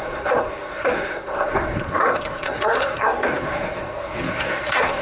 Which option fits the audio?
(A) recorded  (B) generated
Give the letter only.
B